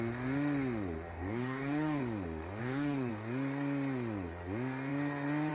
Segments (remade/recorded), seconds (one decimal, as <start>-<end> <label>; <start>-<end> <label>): 0.0-1.1 recorded; 1.1-2.0 remade; 2.0-2.6 recorded; 2.6-3.1 remade; 3.1-5.5 recorded